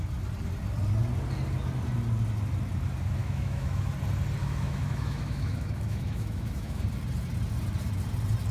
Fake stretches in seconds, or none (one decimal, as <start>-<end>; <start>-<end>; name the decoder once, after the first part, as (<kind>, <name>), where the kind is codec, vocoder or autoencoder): 3.2-3.9 (autoencoder, DAC-VAE); 4.4-6.8